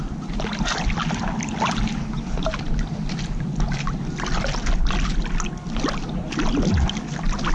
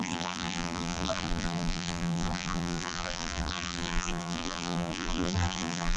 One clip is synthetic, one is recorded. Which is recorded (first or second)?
first